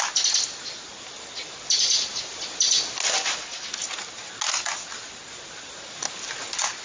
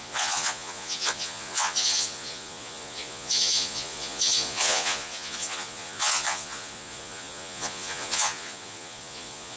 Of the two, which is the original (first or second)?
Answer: first